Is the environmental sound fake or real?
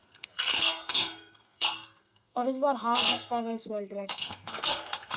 fake